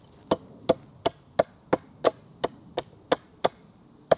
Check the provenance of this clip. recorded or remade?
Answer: recorded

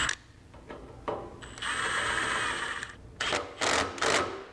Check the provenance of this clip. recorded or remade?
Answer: recorded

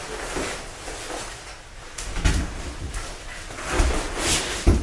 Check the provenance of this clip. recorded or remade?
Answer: recorded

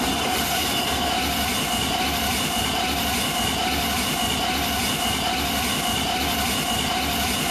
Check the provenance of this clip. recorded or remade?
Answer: recorded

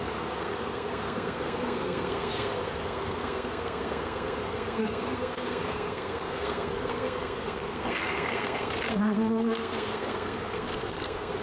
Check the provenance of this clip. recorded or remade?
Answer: remade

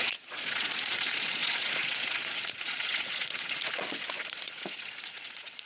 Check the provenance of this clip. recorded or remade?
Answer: remade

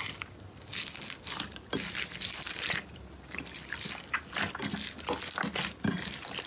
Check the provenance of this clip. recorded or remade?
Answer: recorded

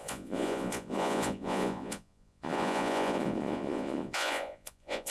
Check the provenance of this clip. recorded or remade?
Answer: remade